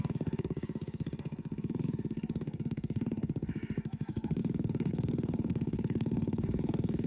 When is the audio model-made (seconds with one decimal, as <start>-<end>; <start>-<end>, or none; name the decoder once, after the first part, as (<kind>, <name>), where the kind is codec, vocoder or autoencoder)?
0.0-7.1 (codec, SNAC)